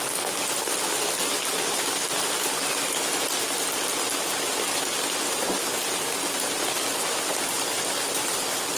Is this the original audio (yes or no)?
yes